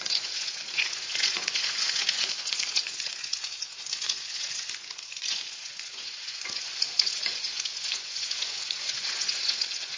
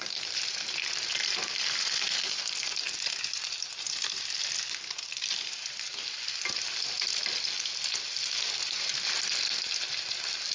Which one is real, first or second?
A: second